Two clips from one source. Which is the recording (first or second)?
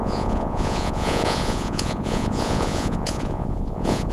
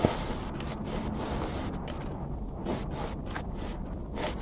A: second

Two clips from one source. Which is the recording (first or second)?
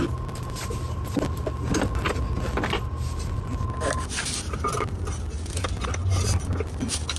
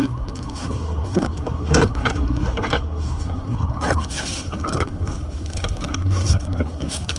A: first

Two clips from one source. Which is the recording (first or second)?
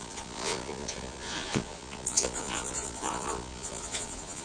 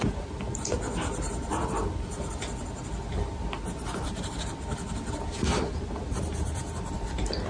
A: second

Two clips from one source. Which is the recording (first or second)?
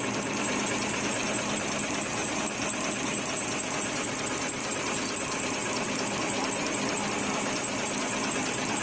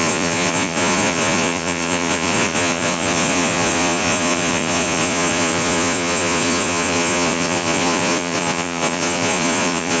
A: first